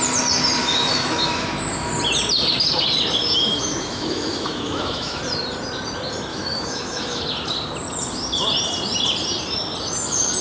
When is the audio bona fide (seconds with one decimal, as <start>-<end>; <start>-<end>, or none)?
0.0-0.6; 1.9-3.2; 5.2-6.3; 7.2-10.4

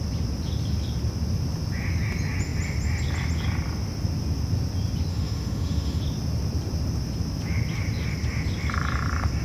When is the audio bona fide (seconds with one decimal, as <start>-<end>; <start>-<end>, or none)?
0.0-5.1; 6.0-9.4